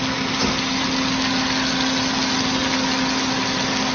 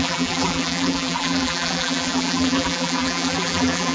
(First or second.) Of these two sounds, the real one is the first